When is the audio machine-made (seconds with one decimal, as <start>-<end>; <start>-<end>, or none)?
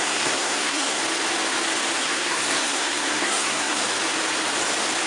0.0-1.0; 2.0-3.8